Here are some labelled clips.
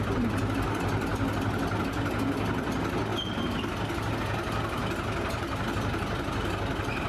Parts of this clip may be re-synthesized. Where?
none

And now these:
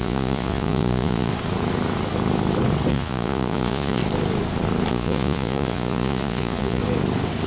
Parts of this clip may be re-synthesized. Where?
0.0-1.3 (vocoder, Vocos); 2.9-4.0; 4.9-6.8

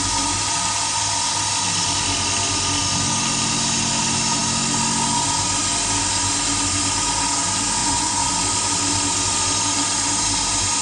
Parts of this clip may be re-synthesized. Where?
7.8-8.3 (vocoder, Vocos)

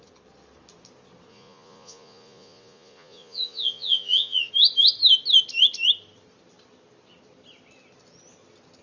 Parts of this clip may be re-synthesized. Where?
1.3-4.5 (vocoder, Vocos)

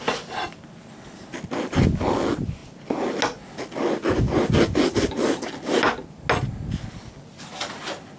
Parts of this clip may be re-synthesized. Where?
none

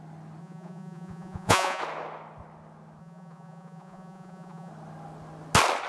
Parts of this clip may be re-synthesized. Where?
0.4-1.8 (vocoder, Vocos); 3.0-4.7

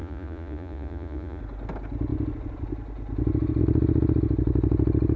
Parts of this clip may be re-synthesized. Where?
0.0-1.4 (vocoder, Vocos)

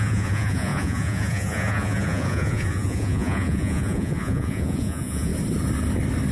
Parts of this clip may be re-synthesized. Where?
0.0-5.3 (vocoder, Vocos)